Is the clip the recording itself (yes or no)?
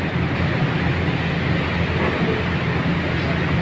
yes